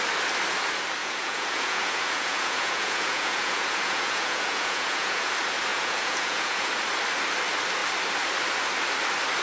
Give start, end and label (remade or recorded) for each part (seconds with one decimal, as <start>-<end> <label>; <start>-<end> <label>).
0.0-1.0 recorded; 1.0-5.3 remade; 5.3-5.7 recorded; 5.7-6.7 remade; 6.7-9.4 recorded